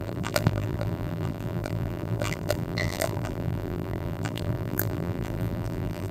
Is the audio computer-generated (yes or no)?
yes